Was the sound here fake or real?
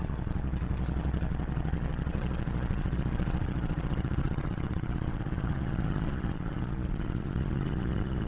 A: fake